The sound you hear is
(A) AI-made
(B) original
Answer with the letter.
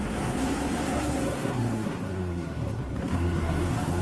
A